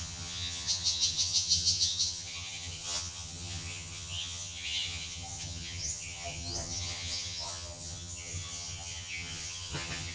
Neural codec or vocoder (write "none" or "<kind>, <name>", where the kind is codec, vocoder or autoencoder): vocoder, HiFi-GAN